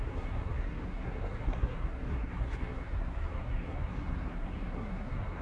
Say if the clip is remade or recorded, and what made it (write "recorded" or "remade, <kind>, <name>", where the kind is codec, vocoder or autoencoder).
remade, codec, SNAC